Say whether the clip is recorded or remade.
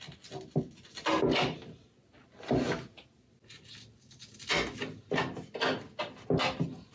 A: recorded